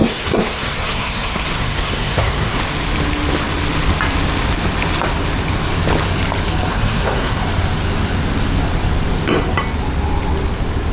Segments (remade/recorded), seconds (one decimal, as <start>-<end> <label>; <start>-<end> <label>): 0.0-2.6 remade; 2.6-6.7 recorded; 6.7-7.4 remade; 7.4-10.9 recorded